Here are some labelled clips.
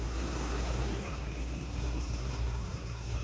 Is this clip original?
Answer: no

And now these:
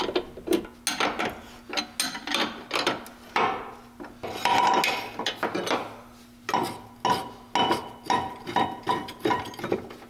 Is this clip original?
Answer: yes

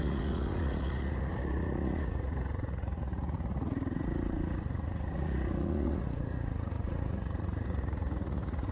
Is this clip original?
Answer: no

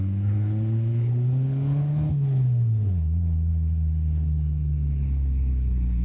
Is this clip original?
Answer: no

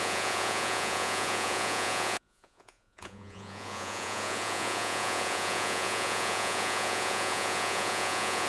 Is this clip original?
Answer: no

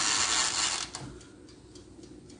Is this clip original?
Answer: yes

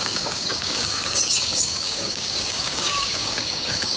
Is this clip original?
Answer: no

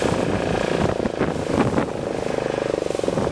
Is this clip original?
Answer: yes